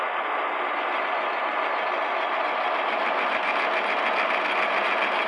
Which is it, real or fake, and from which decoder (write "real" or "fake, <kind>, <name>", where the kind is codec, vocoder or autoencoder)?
real